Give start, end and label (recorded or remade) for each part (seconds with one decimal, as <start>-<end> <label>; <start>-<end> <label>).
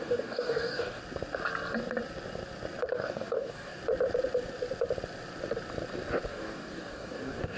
0.0-1.0 remade; 1.0-2.9 recorded; 2.9-3.8 remade; 3.8-6.3 recorded; 6.3-7.6 remade